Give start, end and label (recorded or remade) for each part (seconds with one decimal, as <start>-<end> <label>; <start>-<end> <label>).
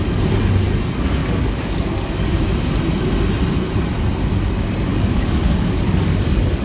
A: 0.0-1.2 recorded; 1.2-2.4 remade; 2.4-4.9 recorded; 4.9-6.6 remade